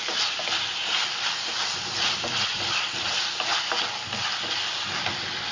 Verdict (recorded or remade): recorded